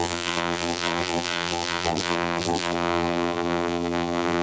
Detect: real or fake fake